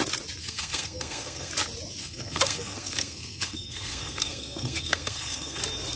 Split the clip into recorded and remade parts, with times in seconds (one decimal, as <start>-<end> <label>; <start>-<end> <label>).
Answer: 0.0-0.4 recorded; 0.4-1.5 remade; 1.5-2.0 recorded; 2.0-5.6 remade; 5.6-6.0 recorded